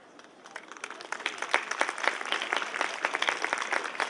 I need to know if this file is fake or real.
real